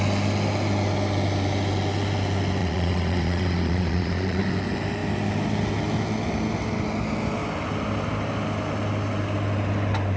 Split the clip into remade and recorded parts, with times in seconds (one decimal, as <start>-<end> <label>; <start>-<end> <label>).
0.0-2.6 recorded; 2.6-4.4 remade; 4.4-10.2 recorded